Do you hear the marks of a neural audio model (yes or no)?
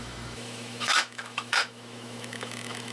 yes